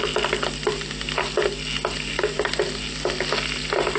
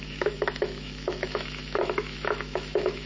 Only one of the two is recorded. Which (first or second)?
first